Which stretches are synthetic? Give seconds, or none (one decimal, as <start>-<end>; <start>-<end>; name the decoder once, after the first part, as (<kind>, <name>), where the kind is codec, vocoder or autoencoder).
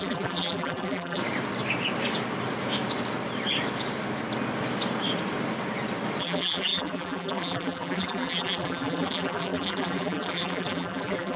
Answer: 0.0-1.2 (vocoder, BigVGAN v2); 6.2-11.4